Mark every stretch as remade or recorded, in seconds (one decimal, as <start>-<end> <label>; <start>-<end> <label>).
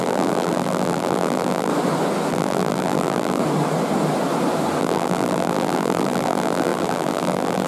0.0-1.7 remade; 1.7-2.3 recorded; 2.3-3.4 remade; 3.4-4.8 recorded; 4.8-7.7 remade